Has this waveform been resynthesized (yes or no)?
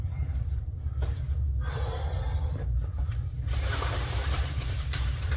yes